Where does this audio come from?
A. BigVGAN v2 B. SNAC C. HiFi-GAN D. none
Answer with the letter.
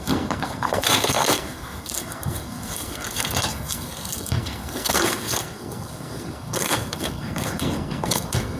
B